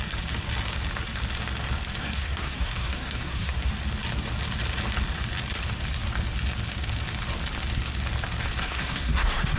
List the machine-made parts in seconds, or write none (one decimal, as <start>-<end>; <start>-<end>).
2.0-3.7; 8.6-9.6